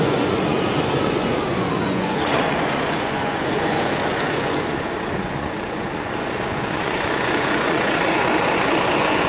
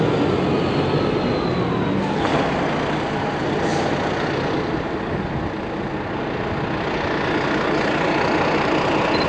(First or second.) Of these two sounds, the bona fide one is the second